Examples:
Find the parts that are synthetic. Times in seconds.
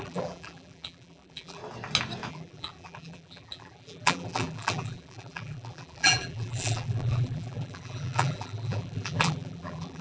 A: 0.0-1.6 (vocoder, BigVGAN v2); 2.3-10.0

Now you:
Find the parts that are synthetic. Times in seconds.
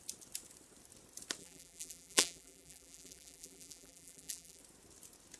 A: 1.4-4.6 (vocoder, BigVGAN v2)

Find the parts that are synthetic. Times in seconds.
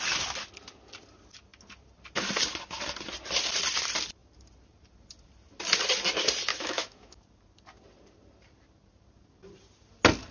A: 6.5-7.2 (autoencoder, DAC-VAE)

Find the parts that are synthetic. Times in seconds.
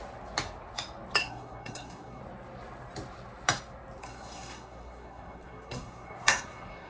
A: 1.2-2.2 (codec, SNAC); 4.0-6.9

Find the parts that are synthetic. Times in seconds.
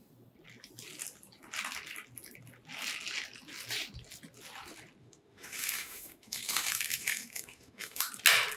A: 5.0-8.1 (autoencoder, DAC-VAE)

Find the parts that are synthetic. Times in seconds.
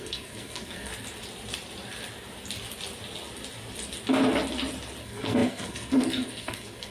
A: 0.0-0.9 (codec, SNAC); 5.0-6.9